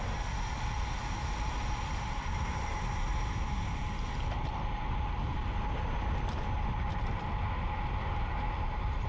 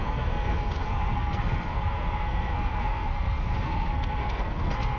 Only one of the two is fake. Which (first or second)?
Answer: second